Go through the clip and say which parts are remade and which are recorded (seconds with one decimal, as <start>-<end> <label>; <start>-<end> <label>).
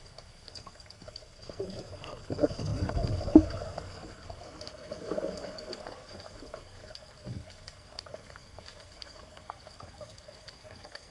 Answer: 0.0-11.1 remade